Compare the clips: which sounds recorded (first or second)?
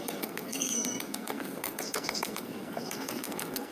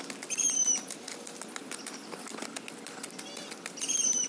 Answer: second